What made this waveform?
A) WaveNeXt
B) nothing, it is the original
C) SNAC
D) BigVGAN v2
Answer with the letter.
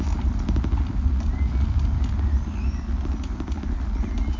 B